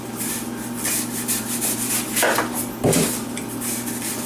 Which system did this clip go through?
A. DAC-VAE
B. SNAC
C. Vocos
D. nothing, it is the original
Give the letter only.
D